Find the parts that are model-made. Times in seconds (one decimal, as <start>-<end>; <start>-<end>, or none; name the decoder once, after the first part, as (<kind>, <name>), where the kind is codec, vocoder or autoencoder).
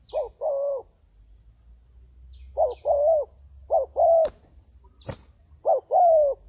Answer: none